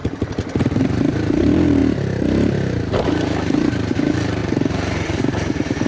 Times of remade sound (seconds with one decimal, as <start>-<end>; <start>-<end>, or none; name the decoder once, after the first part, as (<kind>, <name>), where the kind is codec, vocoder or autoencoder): 0.0-1.8 (vocoder, BigVGAN v2); 2.9-5.9